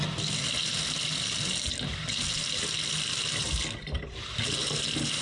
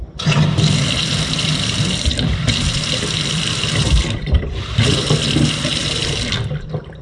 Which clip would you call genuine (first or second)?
first